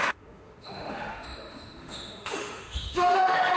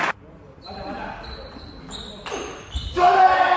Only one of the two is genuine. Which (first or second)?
second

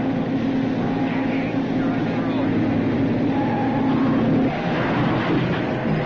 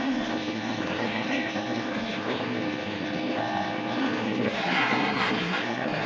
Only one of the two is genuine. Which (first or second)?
first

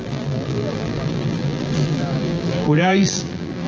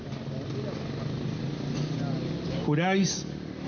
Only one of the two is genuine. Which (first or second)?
second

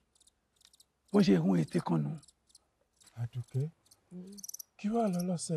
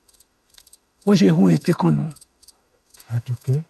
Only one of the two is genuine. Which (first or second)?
first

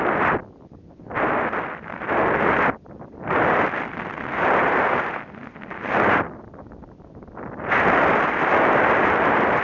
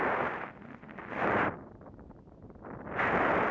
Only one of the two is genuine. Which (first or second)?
second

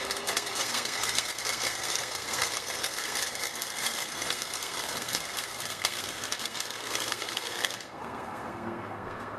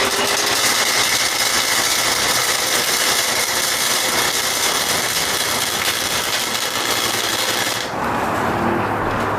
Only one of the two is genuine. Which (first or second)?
second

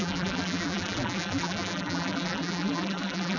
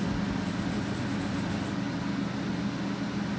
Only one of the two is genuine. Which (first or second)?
second